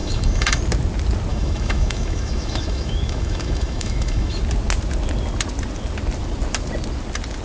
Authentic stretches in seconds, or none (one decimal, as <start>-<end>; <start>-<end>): 0.6-1.3; 4.4-7.4